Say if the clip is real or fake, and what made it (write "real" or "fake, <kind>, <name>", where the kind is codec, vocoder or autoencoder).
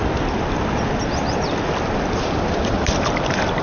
real